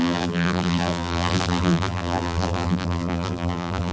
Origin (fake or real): fake